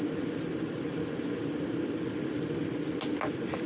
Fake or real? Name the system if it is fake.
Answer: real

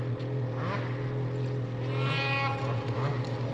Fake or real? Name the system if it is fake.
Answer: real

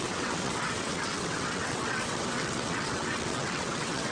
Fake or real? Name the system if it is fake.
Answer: fake, vocoder, WaveNeXt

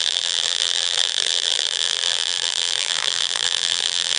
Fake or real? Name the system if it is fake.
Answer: fake, vocoder, BigVGAN v2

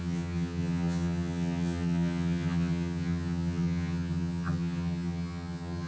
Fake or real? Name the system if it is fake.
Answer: fake, vocoder, HiFi-GAN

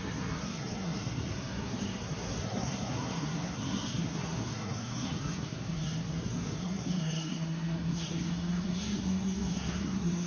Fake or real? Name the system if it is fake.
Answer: fake, codec, SNAC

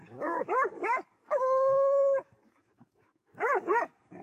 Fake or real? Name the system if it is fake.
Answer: fake, codec, DAC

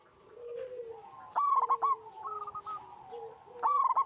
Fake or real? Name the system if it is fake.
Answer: real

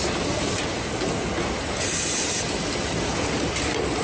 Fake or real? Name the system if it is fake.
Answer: real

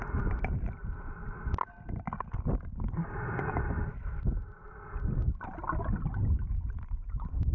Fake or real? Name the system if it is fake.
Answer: real